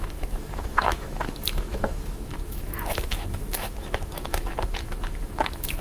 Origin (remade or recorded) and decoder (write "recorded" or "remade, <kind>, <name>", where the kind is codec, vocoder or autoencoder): remade, autoencoder, DAC-VAE